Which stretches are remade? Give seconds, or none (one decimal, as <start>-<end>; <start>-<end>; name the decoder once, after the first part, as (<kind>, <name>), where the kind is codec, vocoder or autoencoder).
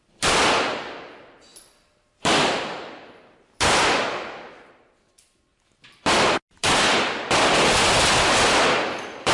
none